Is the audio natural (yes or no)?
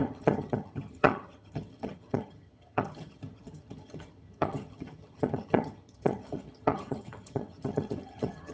no